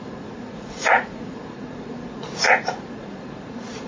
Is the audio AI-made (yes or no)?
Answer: yes